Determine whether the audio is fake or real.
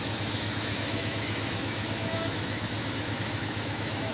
fake